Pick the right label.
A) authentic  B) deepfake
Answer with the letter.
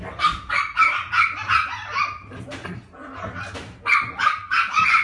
A